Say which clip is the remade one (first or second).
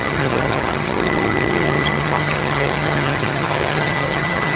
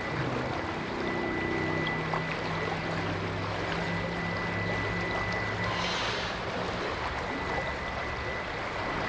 first